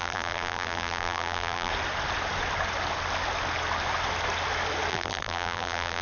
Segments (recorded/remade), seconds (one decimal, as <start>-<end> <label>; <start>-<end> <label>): 0.0-1.7 remade; 1.7-4.9 recorded; 4.9-6.0 remade